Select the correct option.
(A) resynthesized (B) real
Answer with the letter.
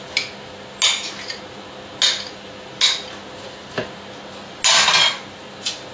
B